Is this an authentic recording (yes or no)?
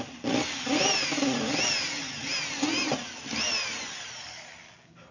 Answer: yes